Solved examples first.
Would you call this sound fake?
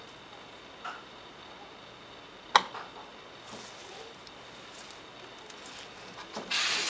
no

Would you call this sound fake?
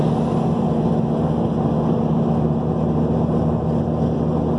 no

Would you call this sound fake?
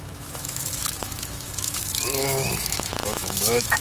yes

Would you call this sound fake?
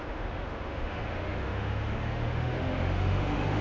yes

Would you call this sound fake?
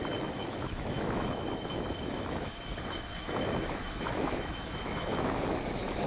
yes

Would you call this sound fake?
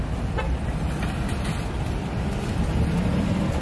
no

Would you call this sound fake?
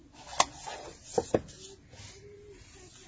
no